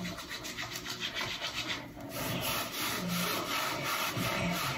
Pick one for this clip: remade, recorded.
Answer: recorded